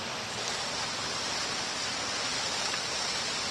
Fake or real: real